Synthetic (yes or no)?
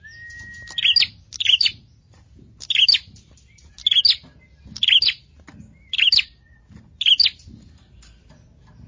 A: no